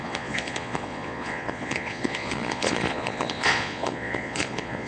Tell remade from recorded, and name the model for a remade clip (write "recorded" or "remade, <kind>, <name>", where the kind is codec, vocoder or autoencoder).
remade, vocoder, Vocos